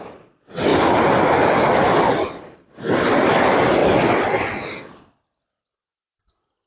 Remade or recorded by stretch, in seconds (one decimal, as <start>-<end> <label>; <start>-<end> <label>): 0.0-6.7 recorded